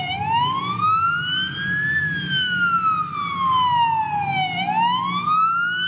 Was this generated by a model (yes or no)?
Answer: no